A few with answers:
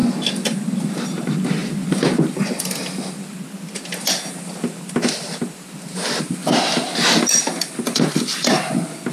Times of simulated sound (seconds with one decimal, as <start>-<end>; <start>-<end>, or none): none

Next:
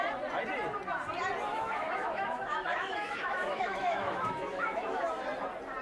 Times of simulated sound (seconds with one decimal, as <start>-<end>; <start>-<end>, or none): 1.5-5.0

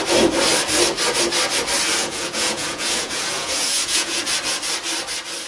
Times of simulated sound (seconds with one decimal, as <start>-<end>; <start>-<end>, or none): 2.0-4.2